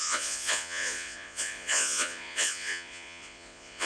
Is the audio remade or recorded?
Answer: remade